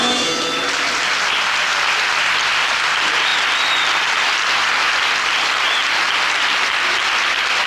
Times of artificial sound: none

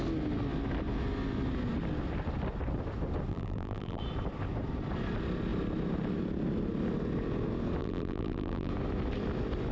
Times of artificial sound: 3.3-4.0 (vocoder, BigVGAN v2); 7.8-8.7

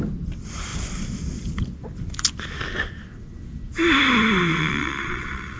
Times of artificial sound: 4.5-5.6 (vocoder, WaveNeXt)

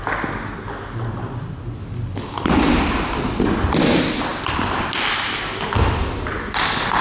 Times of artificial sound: none

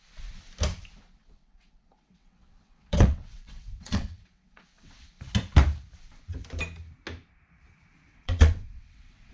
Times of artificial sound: 1.2-5.1 (vocoder, WaveNeXt); 8.1-9.3